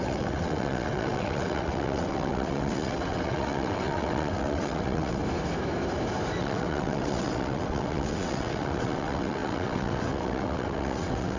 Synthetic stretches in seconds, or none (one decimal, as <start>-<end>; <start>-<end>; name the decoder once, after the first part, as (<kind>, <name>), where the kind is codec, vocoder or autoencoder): 0.0-5.2 (vocoder, WaveNeXt); 6.4-11.4